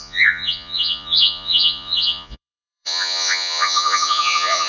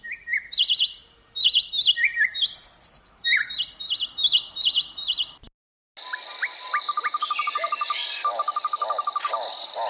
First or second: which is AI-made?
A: first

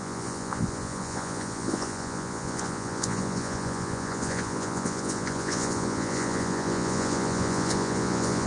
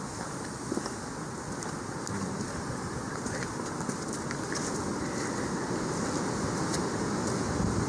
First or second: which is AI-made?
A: first